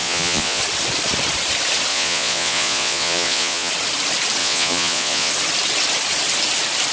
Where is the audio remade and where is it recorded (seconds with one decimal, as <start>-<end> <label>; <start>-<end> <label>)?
0.0-0.6 remade; 0.6-1.9 recorded; 1.9-3.7 remade; 3.7-4.4 recorded; 4.4-5.3 remade; 5.3-6.9 recorded